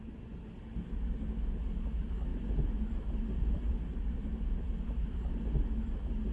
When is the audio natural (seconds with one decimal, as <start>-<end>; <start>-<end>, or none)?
0.0-2.3; 5.4-6.3